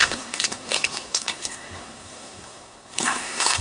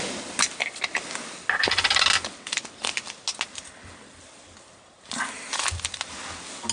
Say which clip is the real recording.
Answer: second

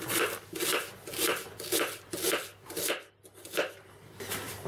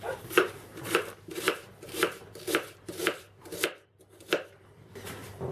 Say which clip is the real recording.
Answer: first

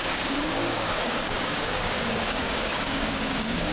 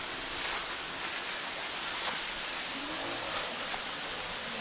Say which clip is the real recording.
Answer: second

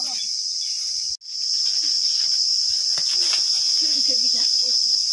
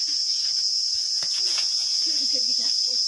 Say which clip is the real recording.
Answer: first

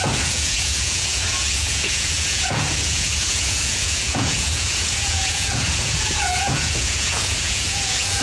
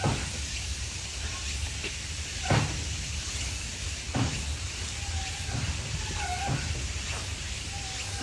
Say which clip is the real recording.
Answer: second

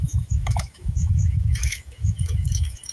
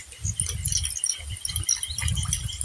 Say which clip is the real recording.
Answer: second